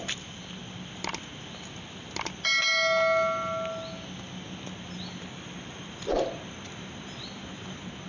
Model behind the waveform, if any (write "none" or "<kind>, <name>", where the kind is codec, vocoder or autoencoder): none